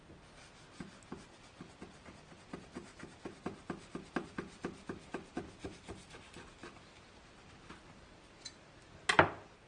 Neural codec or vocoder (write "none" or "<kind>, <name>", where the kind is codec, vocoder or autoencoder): none